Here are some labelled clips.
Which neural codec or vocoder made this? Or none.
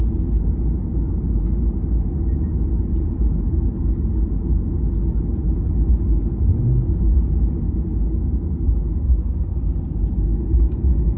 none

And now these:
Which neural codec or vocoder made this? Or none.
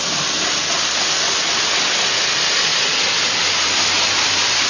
none